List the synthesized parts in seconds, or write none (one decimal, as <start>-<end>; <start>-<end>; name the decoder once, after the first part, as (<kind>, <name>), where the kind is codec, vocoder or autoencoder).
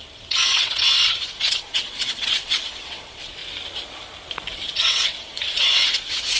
0.0-3.4 (vocoder, WaveNeXt); 4.5-6.4